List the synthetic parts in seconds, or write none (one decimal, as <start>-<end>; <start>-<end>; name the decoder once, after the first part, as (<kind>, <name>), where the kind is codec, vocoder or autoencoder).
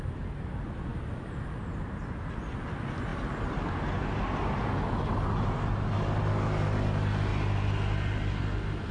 7.3-8.4 (vocoder, BigVGAN v2)